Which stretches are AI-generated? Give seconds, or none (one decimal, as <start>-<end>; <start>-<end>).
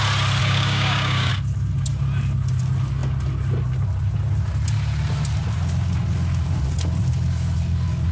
0.4-1.3